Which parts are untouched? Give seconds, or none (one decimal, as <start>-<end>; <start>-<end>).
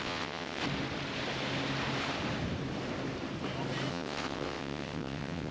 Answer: 0.6-3.9